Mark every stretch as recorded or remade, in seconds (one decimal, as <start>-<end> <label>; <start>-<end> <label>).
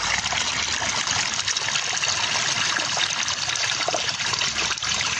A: 0.0-0.5 remade; 0.5-3.6 recorded; 3.6-5.2 remade